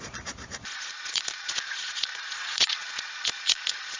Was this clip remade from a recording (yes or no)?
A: yes